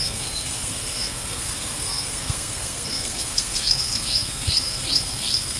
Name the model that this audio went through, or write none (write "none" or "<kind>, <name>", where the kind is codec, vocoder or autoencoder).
codec, SNAC